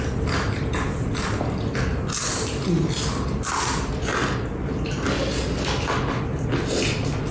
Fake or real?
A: real